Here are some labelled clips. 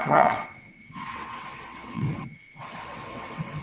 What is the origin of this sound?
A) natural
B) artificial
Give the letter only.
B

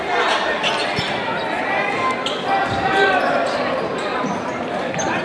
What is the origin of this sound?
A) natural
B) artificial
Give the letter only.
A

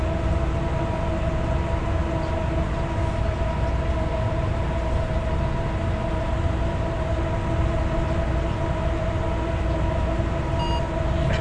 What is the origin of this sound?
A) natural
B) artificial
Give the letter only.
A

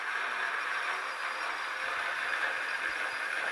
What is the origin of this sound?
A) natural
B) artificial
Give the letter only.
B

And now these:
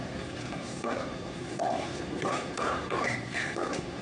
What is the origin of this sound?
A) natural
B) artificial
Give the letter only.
B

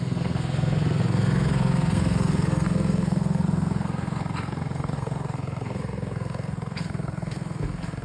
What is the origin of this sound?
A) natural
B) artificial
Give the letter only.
B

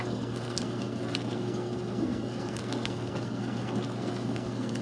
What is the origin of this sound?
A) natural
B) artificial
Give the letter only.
B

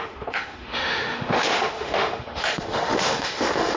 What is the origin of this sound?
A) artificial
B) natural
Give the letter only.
A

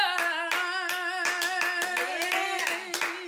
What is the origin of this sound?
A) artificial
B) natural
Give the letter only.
B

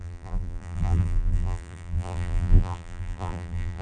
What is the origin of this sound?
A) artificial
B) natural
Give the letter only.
A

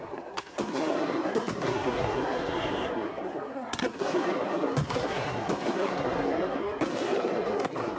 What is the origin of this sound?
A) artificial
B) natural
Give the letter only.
A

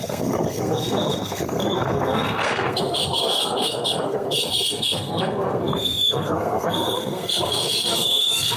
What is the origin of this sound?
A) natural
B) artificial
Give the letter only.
B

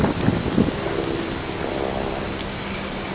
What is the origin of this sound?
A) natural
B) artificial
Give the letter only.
A